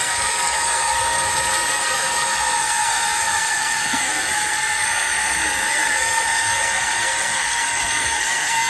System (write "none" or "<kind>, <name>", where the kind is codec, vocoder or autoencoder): codec, SNAC